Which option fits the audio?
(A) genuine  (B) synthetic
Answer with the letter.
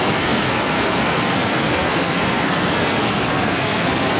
B